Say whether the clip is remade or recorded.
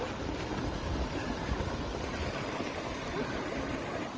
recorded